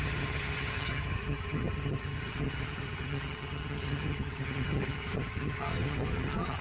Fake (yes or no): yes